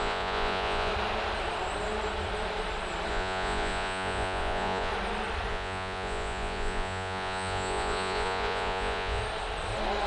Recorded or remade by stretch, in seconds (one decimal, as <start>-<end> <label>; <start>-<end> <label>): 0.0-0.9 remade; 0.9-3.1 recorded; 3.1-4.9 remade; 4.9-5.5 recorded; 5.5-9.2 remade; 9.2-10.1 recorded